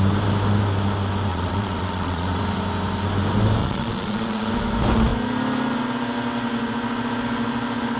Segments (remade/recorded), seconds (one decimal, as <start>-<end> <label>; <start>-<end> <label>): 0.0-1.3 recorded; 1.3-2.4 remade; 2.4-3.6 recorded; 3.6-4.5 remade; 4.5-8.0 recorded